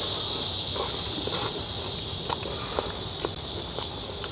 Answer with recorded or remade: recorded